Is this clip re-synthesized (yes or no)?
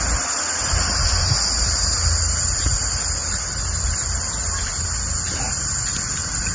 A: no